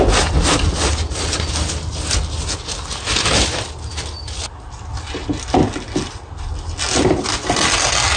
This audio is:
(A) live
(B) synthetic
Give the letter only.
A